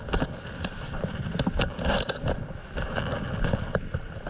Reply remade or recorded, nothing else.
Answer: recorded